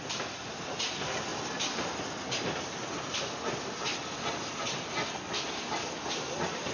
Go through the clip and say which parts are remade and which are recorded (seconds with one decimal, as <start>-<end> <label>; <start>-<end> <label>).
0.0-6.7 recorded